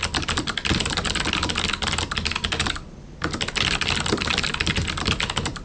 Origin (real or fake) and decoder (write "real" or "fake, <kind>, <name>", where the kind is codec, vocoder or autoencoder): real